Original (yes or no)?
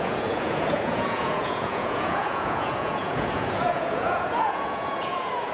no